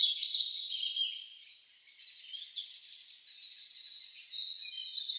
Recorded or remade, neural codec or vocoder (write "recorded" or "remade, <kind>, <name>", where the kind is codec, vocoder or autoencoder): recorded